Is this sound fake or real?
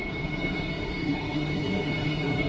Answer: fake